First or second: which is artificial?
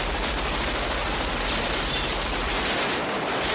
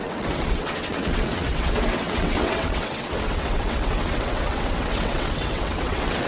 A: second